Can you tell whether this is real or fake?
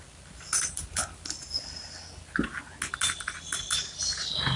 real